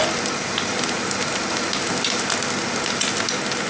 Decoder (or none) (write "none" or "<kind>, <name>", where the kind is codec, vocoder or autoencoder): none